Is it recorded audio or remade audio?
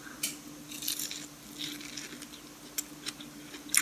recorded